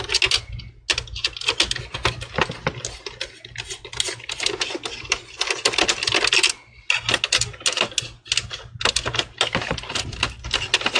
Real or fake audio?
real